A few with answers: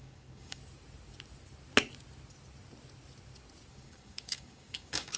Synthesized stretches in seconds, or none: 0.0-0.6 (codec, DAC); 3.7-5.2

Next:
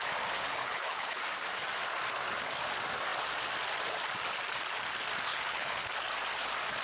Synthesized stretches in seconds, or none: 0.6-1.2 (codec, HILCodec); 5.3-5.9